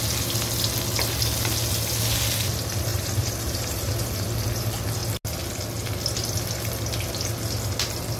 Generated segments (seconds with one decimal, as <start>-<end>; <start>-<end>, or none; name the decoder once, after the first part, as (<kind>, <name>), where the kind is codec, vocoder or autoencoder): 2.9-3.9 (vocoder, BigVGAN v2)